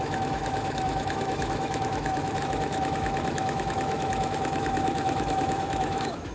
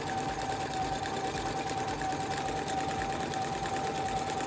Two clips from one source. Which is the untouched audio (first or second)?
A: second